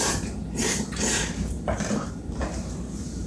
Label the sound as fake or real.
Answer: fake